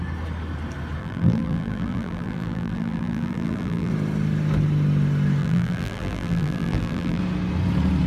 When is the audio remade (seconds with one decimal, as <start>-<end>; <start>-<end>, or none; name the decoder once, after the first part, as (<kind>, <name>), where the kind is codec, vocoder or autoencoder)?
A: 1.0-3.9 (vocoder, BigVGAN v2); 5.4-7.2

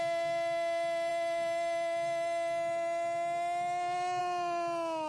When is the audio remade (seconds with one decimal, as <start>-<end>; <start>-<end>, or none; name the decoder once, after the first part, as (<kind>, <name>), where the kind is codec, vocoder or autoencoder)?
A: none

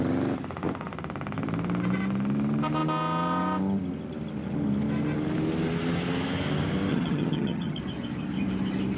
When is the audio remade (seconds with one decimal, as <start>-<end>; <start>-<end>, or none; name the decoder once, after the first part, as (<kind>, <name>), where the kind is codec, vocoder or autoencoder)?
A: 6.9-7.8 (vocoder, HiFi-GAN)

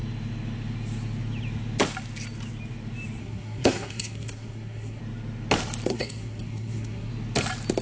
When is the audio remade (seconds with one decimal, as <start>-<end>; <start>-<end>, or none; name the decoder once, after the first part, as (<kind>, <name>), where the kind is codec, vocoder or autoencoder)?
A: 3.2-5.0 (codec, SNAC); 5.9-7.1

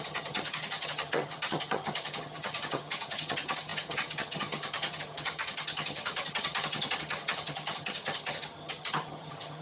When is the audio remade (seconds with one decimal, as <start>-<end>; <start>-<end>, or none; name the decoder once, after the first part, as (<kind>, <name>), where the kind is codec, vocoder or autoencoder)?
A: 0.0-9.6 (vocoder, HiFi-GAN)

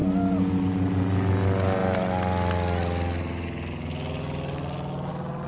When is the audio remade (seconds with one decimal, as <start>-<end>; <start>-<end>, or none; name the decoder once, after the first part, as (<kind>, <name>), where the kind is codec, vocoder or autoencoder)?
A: none